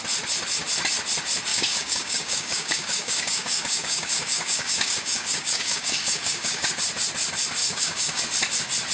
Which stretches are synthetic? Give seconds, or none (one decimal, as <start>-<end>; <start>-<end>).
1.5-6.7; 7.6-8.2